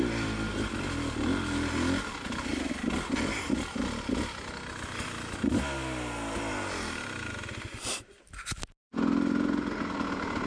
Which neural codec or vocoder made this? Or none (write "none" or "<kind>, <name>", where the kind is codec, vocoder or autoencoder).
none